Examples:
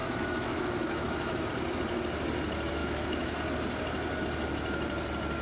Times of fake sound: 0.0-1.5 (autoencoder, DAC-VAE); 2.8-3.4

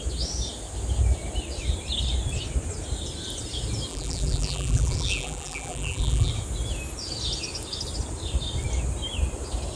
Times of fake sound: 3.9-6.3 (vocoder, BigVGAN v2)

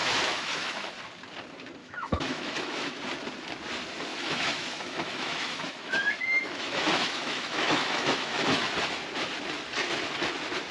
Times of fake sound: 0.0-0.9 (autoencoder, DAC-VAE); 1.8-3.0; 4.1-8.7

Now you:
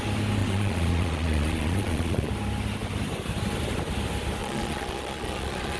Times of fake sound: 0.4-2.3 (vocoder, Vocos); 4.4-5.8

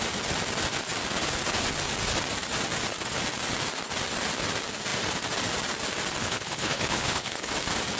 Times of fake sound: 6.2-7.5 (codec, HILCodec)